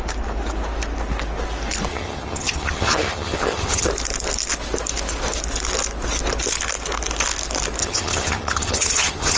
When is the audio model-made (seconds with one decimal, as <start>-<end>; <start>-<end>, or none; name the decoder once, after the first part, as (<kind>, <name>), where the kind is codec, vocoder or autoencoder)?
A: 1.9-3.9 (vocoder, HiFi-GAN); 7.8-9.4